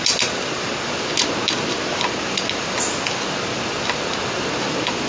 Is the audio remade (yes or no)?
no